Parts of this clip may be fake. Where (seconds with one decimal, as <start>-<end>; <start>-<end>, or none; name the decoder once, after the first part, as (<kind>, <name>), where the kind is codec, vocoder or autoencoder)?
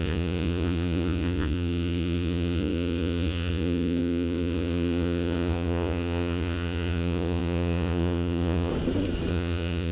0.0-8.7 (vocoder, Vocos); 9.3-9.9